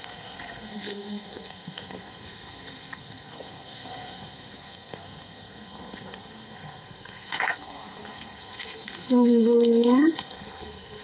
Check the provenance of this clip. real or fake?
fake